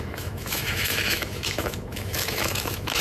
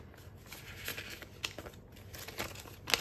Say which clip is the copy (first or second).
first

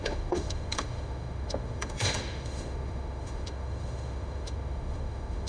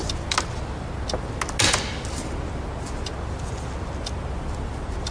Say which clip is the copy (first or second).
first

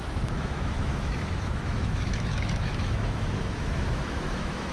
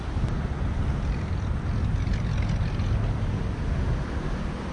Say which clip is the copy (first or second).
first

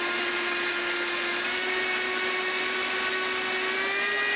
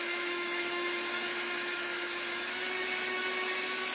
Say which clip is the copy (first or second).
second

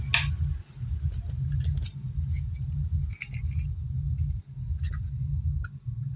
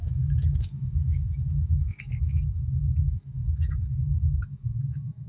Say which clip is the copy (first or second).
second